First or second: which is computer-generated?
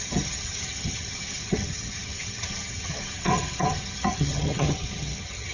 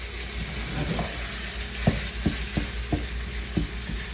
first